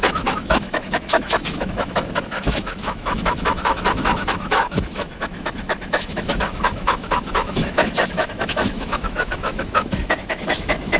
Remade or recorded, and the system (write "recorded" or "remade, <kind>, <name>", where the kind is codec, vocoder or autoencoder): remade, autoencoder, DAC-VAE